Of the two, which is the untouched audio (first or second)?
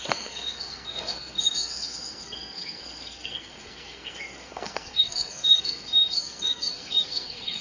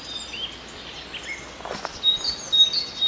second